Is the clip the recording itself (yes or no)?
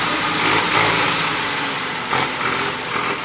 yes